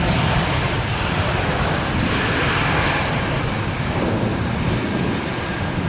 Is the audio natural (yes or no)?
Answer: no